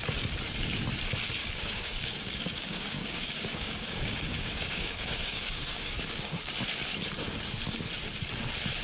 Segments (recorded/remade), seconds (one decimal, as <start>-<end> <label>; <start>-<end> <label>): 0.0-1.4 recorded; 1.4-6.5 remade; 6.5-8.8 recorded